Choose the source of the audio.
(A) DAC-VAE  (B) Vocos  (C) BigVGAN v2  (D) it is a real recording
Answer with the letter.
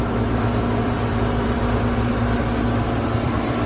C